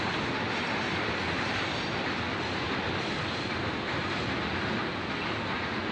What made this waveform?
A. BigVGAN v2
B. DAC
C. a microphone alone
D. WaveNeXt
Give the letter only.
C